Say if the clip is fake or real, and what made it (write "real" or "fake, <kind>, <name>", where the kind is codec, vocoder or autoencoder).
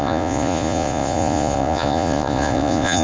fake, vocoder, Vocos